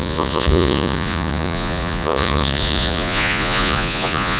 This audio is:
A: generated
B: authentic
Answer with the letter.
A